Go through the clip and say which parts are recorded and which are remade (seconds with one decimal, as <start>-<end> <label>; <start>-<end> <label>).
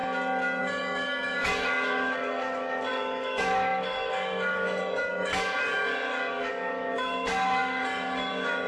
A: 0.0-0.6 recorded; 0.6-8.7 remade